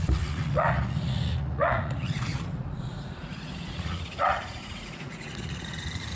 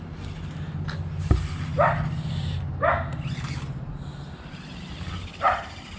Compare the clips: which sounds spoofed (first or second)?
first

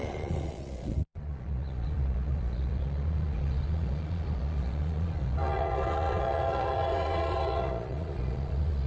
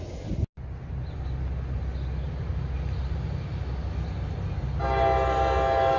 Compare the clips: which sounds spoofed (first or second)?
first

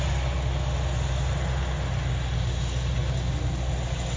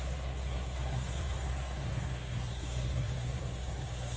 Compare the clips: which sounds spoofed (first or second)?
second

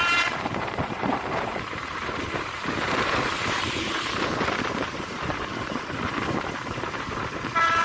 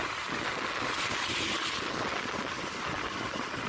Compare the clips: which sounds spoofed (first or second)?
first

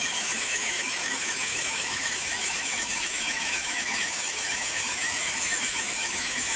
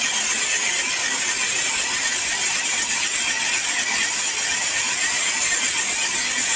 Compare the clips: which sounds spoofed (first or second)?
first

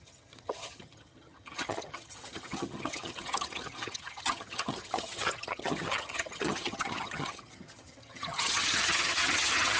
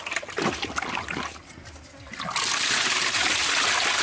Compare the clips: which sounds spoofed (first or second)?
first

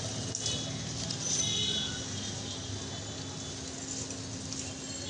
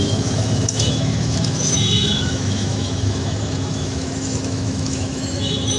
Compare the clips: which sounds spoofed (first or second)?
second